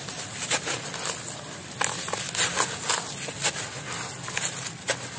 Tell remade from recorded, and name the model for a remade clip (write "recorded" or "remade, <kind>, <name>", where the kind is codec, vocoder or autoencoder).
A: recorded